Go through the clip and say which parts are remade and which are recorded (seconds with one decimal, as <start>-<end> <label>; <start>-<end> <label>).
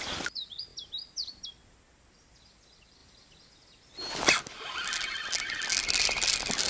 0.0-6.7 recorded